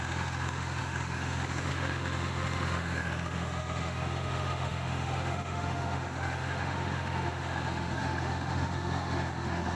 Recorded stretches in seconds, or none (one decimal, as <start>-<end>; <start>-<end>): none